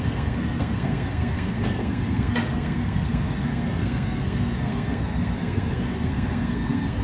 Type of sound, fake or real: fake